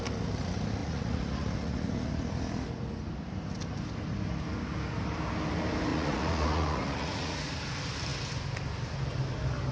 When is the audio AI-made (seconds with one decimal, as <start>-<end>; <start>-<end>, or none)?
0.8-2.1; 5.9-7.5